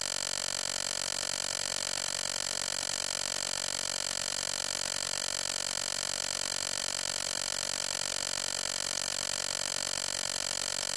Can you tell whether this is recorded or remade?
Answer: recorded